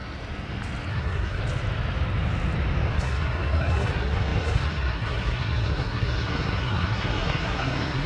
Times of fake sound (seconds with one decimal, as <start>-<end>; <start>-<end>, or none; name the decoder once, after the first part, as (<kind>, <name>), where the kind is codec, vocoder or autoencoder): 0.9-1.4 (codec, SNAC); 2.9-8.1